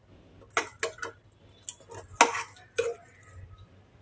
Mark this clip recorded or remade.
recorded